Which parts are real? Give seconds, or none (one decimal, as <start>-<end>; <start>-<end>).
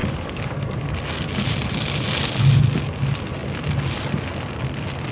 0.9-5.1